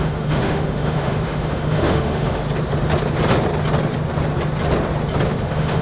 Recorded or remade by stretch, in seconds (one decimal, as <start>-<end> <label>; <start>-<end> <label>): 0.0-2.4 remade; 2.4-5.3 recorded; 5.3-5.8 remade